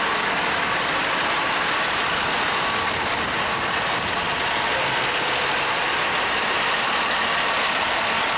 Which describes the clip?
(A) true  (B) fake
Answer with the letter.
A